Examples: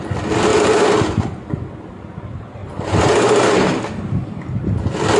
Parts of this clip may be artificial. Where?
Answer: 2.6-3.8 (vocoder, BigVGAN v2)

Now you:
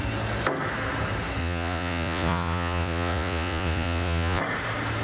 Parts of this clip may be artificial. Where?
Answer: 1.4-4.4 (vocoder, Vocos)